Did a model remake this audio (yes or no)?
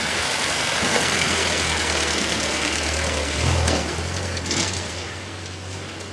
yes